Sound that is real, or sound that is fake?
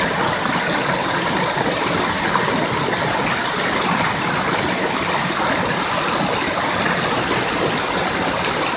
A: real